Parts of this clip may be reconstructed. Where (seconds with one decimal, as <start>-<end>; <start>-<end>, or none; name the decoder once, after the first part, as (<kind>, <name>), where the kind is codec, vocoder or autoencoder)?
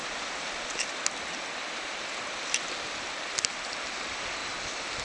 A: 0.0-0.7 (vocoder, BigVGAN v2)